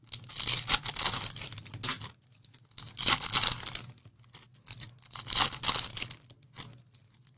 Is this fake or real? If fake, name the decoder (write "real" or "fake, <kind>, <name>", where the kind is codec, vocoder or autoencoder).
real